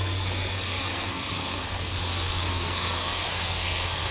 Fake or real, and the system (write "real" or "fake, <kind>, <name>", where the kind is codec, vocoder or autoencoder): fake, codec, SNAC